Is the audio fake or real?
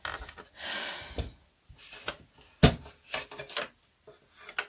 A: real